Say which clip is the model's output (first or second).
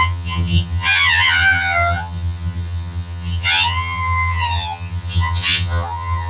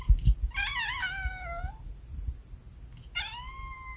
first